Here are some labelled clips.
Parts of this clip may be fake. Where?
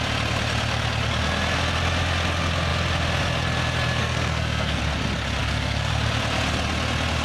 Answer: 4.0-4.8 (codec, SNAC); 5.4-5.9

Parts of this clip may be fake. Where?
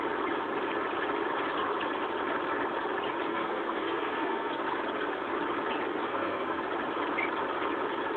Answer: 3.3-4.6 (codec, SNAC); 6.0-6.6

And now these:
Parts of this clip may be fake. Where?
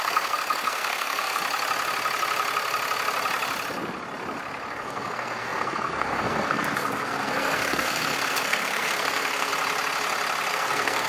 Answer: 0.0-1.4 (codec, SNAC); 4.7-9.5; 10.5-11.1